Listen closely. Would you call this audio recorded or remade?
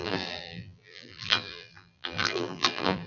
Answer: remade